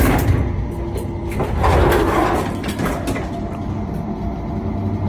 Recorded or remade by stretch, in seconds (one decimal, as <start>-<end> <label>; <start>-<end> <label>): 0.0-5.1 recorded

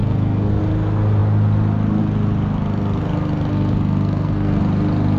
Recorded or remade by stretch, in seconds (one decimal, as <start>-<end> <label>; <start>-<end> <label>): 0.0-0.6 remade; 0.6-3.5 recorded; 3.5-4.6 remade; 4.6-5.2 recorded